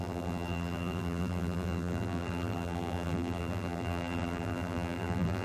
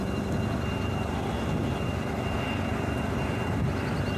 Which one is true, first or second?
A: second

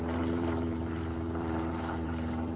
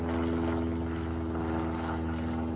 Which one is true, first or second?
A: second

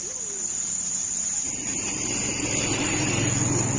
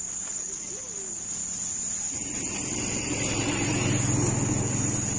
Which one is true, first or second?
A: second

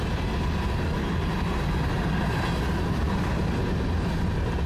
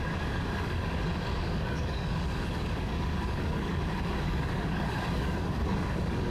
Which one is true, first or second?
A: first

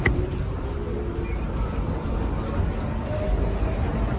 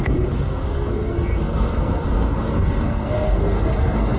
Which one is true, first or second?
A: first